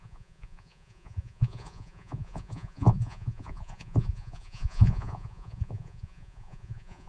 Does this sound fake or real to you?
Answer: fake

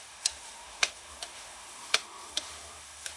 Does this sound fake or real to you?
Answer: fake